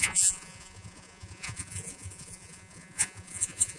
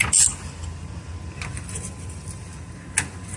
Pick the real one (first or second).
second